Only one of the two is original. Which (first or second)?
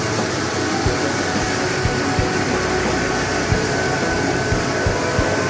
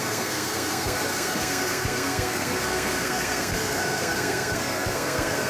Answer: first